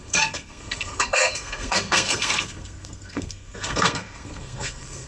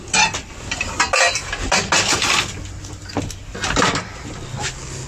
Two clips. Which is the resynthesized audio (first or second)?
first